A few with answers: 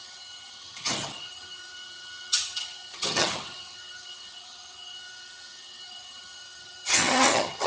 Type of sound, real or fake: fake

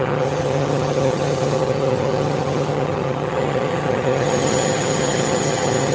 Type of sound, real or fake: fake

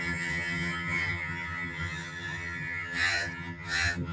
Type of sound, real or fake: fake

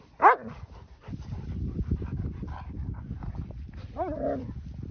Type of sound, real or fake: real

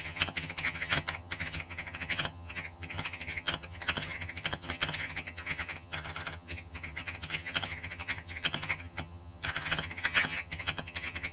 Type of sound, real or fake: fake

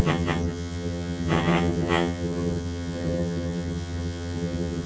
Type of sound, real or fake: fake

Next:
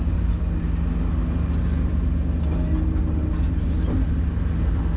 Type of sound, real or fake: real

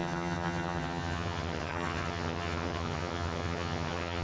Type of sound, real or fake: fake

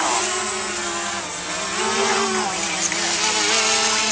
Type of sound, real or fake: real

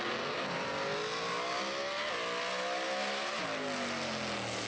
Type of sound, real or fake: real